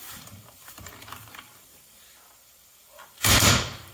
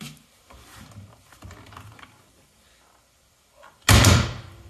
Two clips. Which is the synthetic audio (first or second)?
first